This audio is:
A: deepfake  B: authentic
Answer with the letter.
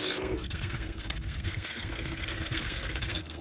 A